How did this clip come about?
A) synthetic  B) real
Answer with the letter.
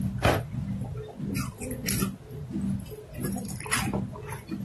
B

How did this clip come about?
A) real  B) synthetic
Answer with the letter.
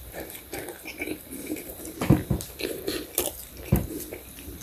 B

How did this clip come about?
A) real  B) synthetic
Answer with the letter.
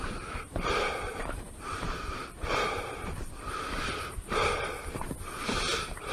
B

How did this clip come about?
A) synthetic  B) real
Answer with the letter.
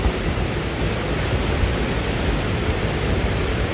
A